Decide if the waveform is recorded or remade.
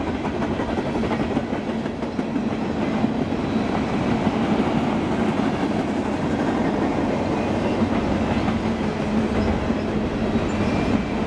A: recorded